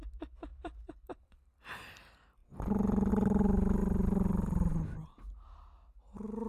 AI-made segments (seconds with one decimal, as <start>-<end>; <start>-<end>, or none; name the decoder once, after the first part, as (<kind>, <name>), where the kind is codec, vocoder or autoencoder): 0.5-1.8 (vocoder, BigVGAN v2)